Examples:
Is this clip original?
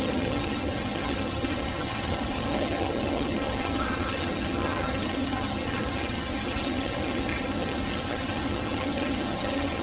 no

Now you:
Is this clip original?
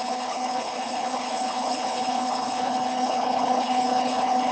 no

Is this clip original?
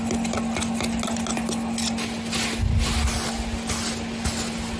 yes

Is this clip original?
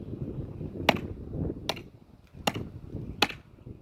yes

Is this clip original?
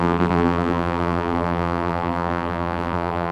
no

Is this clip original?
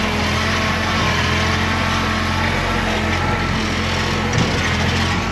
yes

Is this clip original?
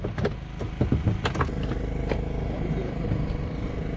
yes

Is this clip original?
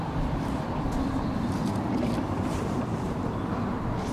no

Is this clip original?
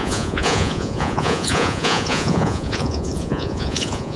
no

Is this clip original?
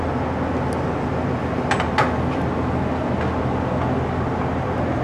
yes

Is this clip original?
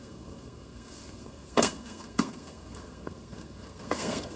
no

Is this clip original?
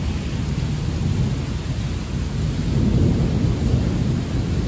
yes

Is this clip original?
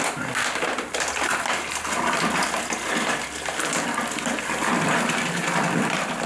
yes